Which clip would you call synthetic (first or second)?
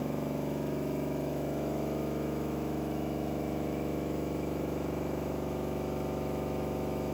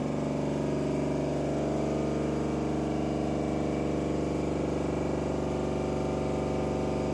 first